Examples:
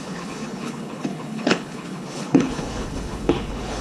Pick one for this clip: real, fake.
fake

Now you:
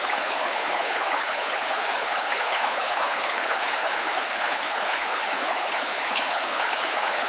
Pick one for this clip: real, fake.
fake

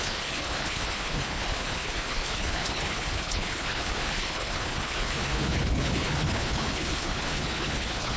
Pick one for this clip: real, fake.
fake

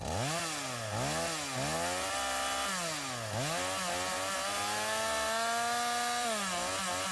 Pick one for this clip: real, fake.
real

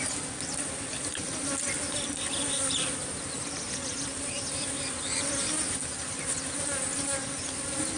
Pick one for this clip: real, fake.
real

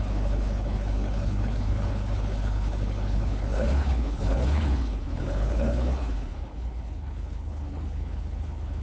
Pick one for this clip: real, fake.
fake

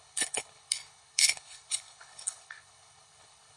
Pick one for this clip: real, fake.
fake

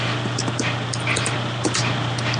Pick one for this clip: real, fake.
real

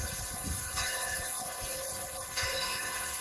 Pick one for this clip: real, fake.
fake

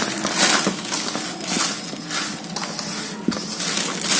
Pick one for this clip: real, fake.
real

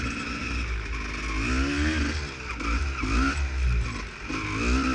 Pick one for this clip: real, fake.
real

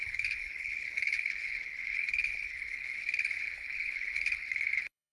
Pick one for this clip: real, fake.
fake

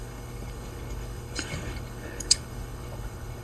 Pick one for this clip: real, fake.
fake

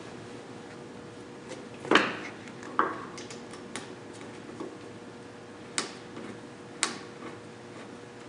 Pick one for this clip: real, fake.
real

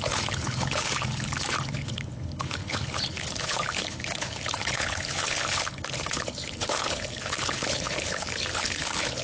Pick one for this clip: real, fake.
fake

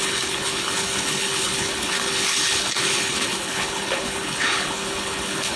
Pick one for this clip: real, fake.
fake